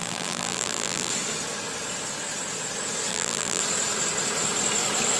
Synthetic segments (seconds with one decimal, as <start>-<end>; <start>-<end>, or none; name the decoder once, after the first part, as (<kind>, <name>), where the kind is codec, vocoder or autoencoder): 0.0-1.1 (vocoder, BigVGAN v2); 3.1-3.6